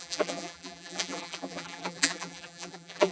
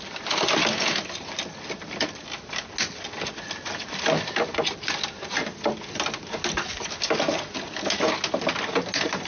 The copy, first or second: first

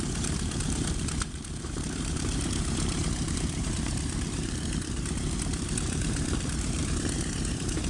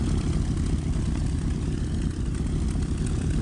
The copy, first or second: first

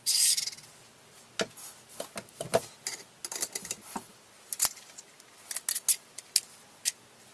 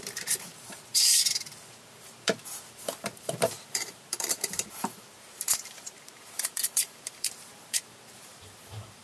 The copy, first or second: second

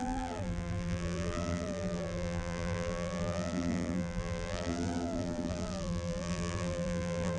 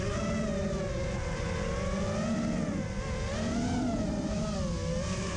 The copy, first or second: first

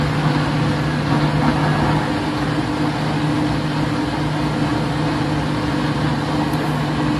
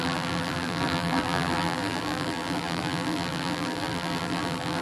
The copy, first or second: second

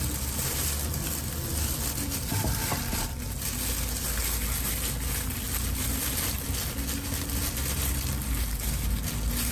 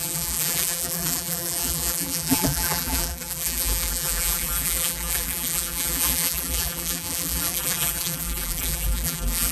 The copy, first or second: second